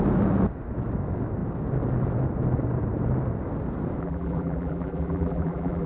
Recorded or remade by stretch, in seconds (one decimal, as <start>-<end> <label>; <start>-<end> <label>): 0.0-4.0 recorded; 4.0-5.9 remade